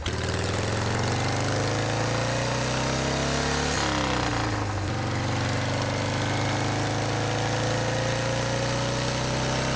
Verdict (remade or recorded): recorded